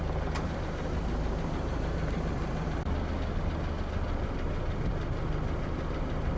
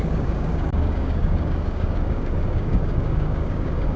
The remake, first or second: second